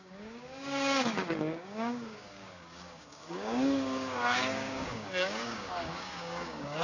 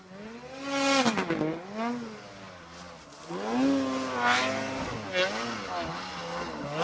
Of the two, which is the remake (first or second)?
first